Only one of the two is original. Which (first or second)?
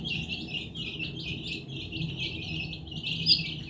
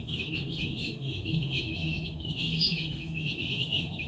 first